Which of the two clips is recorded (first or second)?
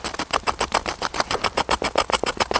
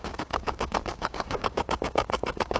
first